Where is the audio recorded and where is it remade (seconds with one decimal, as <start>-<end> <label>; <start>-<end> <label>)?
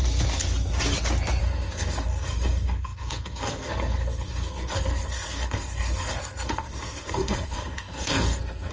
0.0-1.4 recorded; 1.4-8.7 remade